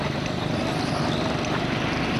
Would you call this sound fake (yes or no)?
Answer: no